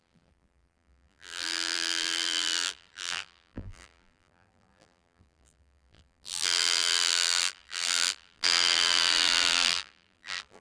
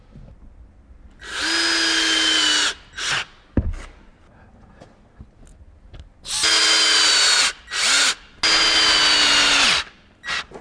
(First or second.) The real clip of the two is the second